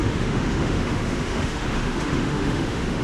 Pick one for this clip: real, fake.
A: fake